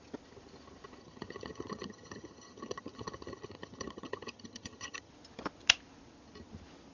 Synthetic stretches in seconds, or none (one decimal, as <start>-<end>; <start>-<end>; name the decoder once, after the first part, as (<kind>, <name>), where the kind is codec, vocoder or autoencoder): 1.0-5.1 (vocoder, HiFi-GAN)